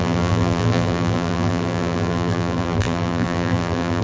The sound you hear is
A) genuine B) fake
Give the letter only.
B